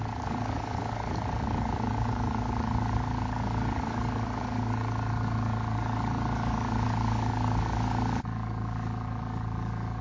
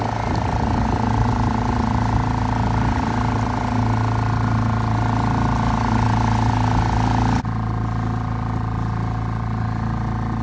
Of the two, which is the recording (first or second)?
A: second